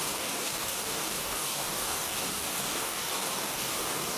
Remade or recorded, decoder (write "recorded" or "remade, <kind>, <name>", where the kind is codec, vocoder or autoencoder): remade, codec, DAC